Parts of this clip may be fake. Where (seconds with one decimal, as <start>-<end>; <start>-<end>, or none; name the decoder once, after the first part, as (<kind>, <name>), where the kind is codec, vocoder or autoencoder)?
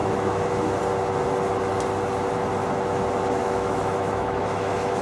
0.0-0.8 (autoencoder, DAC-VAE); 3.4-5.0